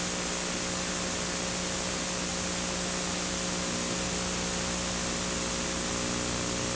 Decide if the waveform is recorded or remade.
recorded